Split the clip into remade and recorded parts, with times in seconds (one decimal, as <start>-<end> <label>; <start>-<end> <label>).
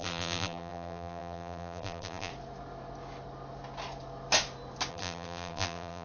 0.0-2.3 remade; 2.3-4.9 recorded; 4.9-6.0 remade